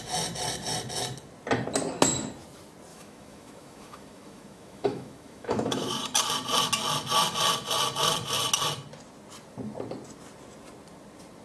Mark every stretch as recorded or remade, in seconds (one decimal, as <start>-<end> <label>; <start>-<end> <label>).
0.0-2.9 recorded; 2.9-5.9 remade; 5.9-11.4 recorded